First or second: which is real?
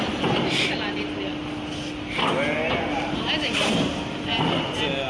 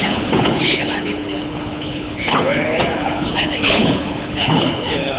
first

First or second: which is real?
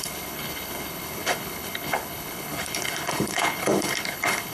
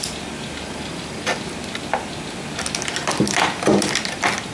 second